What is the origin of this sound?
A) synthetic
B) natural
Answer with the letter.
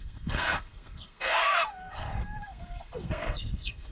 A